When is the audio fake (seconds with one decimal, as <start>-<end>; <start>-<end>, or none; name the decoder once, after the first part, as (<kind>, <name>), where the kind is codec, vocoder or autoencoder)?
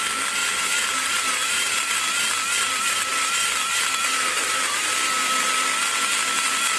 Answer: 0.4-2.0 (vocoder, BigVGAN v2); 3.1-4.9